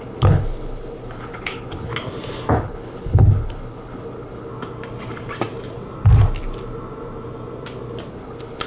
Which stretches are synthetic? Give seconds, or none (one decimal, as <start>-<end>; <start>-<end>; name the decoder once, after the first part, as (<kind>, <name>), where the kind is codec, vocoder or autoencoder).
0.0-1.9 (codec, HILCodec); 2.5-4.5; 8.1-8.7